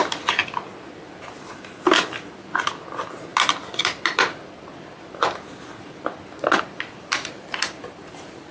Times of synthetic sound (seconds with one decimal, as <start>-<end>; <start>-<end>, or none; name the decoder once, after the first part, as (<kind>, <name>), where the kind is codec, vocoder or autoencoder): 3.3-8.5 (vocoder, BigVGAN v2)